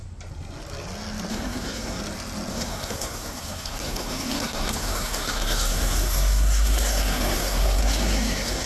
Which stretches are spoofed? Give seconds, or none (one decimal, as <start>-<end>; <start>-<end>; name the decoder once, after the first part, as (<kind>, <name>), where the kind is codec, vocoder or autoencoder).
1.3-2.0 (codec, SNAC); 2.5-8.7